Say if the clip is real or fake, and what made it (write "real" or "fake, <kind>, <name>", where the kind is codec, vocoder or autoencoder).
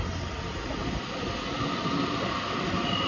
real